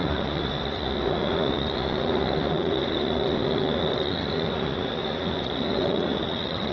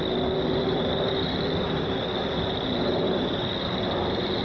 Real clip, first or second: second